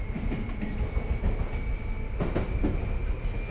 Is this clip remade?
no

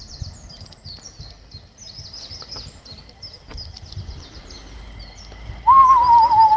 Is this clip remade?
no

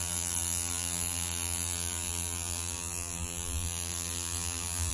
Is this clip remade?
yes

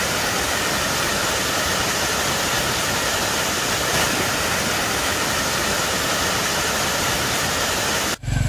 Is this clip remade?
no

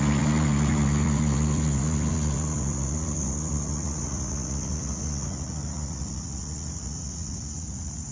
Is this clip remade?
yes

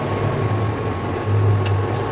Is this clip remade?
no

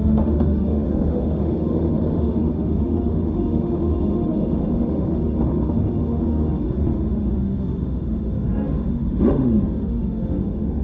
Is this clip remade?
yes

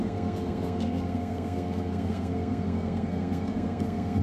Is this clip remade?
yes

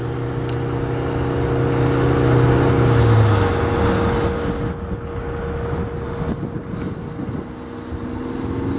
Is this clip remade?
no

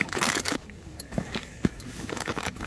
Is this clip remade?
yes